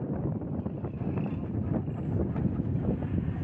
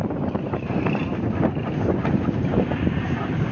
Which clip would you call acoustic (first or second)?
first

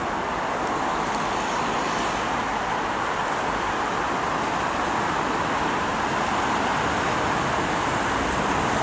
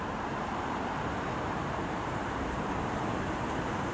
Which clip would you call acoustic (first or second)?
first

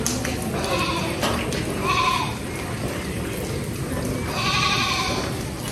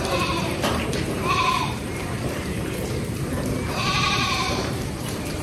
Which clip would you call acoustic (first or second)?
first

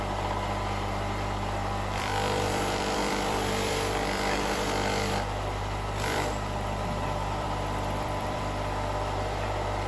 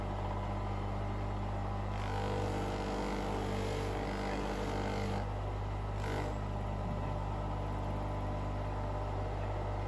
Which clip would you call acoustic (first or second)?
second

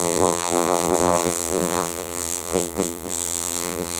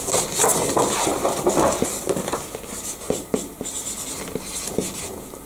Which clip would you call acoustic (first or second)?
second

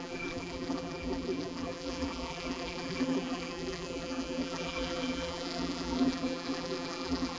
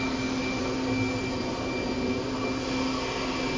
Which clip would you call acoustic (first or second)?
second